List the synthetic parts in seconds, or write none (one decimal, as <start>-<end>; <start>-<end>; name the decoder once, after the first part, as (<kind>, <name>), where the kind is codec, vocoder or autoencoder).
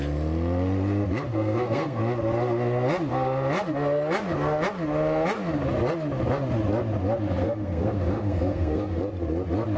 1.3-2.0 (codec, SNAC); 7.4-9.0